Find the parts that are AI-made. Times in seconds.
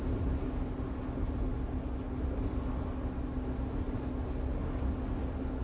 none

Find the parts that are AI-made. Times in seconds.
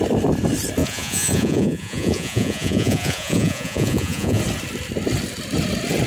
0.8-4.4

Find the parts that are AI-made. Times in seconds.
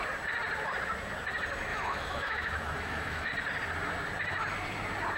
1.7-3.3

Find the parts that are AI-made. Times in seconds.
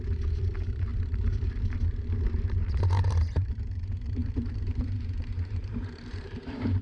0.0-6.8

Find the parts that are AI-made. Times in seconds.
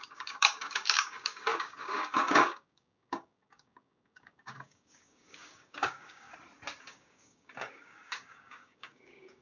0.0-6.3; 6.8-9.4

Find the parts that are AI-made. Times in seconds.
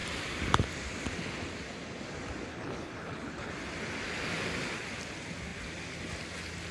2.5-3.5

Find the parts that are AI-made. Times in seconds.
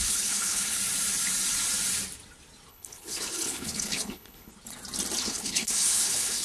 0.0-0.8; 2.7-4.5; 5.2-6.4